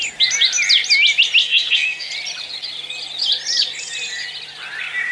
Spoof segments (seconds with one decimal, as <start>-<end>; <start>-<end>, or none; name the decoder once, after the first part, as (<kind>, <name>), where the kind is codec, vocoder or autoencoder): 1.4-2.1 (codec, SNAC)

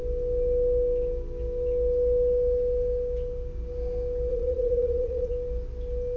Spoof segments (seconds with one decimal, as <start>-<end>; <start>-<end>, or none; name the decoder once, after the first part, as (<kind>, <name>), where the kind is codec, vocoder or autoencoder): 4.3-5.3 (vocoder, Vocos)

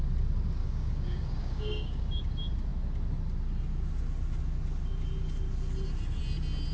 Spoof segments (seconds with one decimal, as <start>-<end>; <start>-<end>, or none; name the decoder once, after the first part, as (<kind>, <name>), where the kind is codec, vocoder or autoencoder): 0.6-2.1 (codec, DAC)

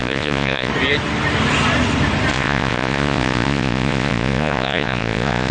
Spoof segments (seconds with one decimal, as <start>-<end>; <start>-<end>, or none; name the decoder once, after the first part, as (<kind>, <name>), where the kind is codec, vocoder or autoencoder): 0.0-0.7 (vocoder, Vocos); 2.3-5.5

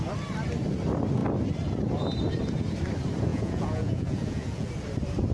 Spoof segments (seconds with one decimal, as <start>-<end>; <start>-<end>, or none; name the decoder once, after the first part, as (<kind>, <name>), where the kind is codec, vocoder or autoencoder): 3.3-4.7 (vocoder, Vocos)

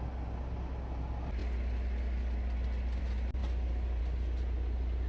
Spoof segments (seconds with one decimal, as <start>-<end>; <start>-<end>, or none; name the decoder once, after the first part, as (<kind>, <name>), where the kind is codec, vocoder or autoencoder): none

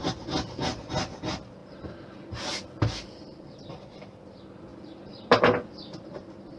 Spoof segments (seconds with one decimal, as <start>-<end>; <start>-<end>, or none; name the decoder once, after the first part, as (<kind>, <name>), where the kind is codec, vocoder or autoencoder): 1.6-3.7 (vocoder, BigVGAN v2); 4.7-5.7